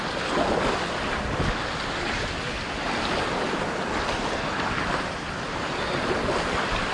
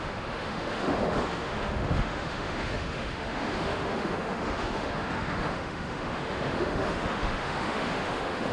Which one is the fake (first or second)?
second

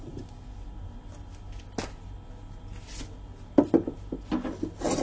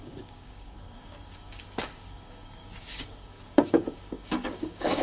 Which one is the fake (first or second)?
second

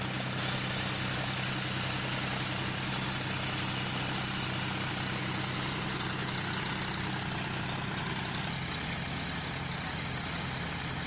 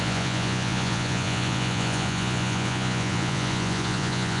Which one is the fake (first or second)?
second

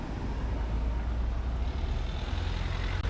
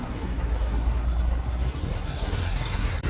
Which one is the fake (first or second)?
second